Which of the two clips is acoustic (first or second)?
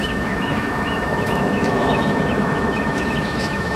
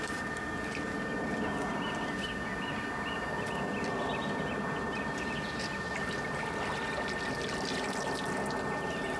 second